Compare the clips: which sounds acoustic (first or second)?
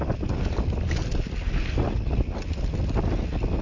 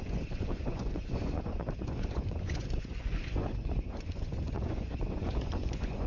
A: first